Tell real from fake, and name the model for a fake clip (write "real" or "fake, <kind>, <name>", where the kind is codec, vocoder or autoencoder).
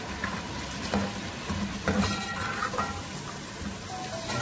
real